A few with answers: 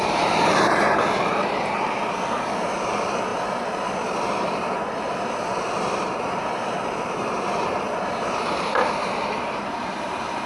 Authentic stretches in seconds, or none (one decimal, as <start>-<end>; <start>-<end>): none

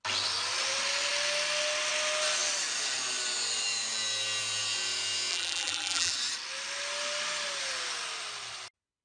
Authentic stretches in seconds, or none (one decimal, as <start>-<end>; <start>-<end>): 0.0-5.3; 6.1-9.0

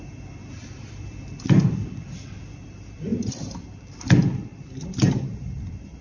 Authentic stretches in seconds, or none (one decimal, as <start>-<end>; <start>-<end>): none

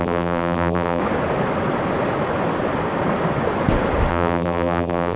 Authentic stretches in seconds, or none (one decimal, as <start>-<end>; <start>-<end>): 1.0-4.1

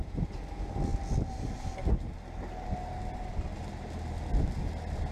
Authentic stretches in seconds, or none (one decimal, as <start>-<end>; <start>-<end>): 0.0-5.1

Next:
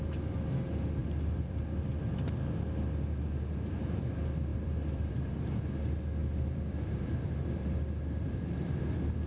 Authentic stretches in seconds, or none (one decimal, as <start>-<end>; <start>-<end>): 0.0-1.0; 2.0-4.5; 5.4-6.2

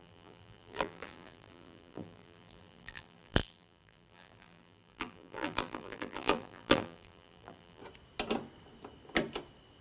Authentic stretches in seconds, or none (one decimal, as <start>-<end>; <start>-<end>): 7.8-9.8